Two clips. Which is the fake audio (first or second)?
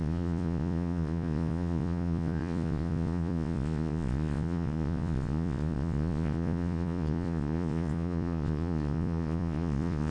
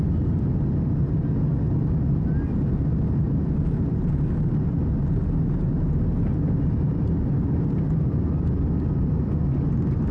first